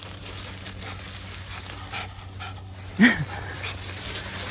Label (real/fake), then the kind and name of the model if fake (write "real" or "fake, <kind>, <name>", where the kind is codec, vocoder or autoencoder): real